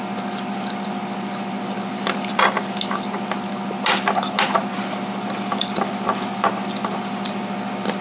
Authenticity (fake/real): real